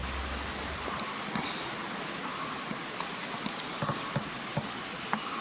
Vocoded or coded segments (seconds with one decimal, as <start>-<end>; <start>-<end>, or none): none